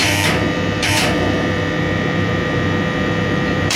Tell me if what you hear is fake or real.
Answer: fake